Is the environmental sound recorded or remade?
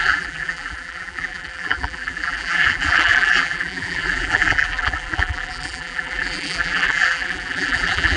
remade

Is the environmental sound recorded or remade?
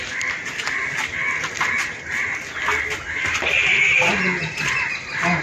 recorded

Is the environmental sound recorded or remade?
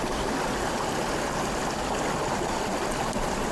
recorded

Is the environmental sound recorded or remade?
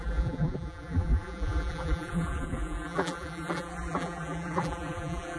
remade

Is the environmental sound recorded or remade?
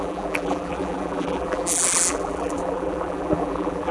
remade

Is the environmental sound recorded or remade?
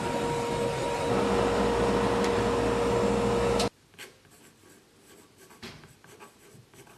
recorded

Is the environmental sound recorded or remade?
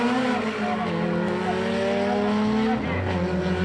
recorded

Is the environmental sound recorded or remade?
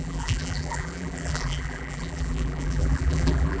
remade